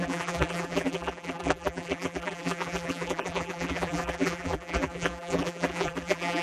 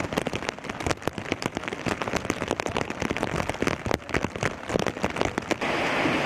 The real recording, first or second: second